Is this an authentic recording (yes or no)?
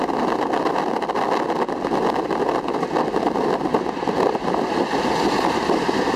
yes